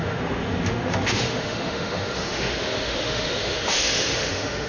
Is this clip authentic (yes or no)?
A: no